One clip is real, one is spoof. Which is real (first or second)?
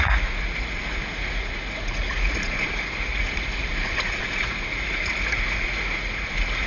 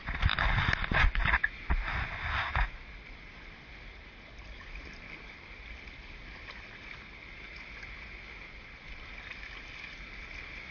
second